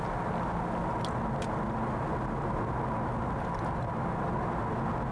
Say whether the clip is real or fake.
real